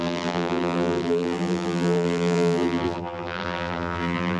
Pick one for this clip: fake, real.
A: fake